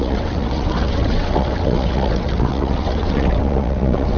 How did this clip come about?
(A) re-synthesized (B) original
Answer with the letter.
A